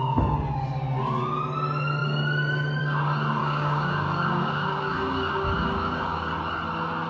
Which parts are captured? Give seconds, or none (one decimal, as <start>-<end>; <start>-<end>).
0.0-3.4; 6.3-7.1